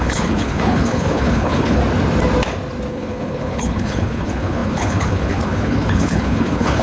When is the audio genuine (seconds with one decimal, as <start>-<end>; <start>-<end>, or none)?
1.8-2.9